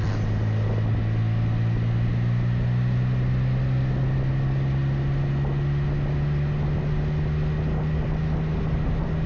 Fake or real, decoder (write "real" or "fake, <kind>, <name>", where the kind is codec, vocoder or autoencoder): real